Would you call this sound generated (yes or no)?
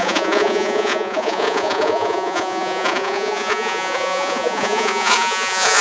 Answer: yes